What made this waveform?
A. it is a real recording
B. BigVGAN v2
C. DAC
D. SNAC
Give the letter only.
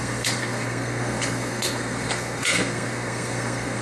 D